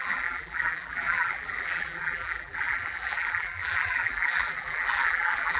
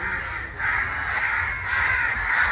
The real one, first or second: second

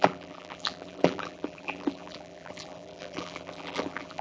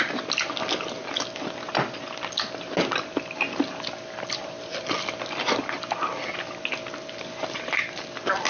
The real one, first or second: second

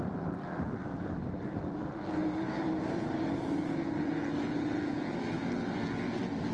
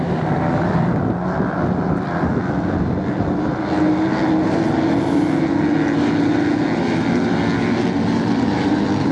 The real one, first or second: second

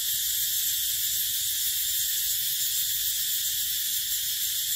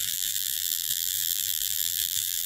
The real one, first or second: first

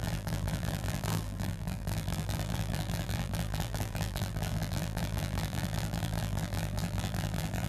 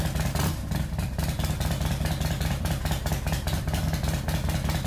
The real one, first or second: second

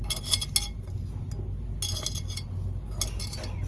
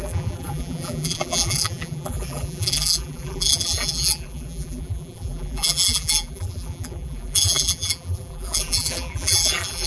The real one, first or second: first